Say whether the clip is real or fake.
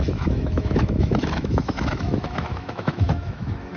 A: fake